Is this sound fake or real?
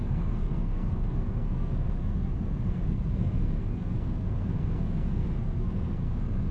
fake